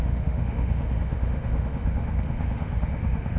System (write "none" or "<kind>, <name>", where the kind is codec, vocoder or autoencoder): autoencoder, DAC-VAE